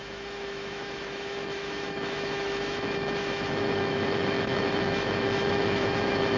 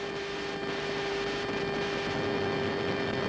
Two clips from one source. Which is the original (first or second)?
second